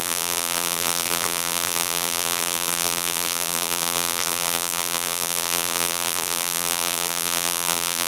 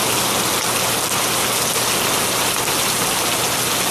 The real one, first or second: second